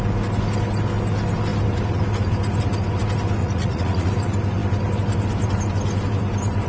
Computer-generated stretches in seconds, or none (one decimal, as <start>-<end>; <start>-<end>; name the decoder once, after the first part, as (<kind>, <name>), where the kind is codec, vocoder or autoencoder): 3.4-4.1 (vocoder, Vocos)